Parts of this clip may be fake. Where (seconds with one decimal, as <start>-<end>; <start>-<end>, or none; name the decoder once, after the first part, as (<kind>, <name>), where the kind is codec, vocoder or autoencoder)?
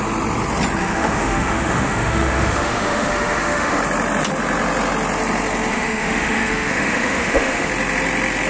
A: 0.8-3.8 (autoencoder, DAC-VAE); 5.7-7.7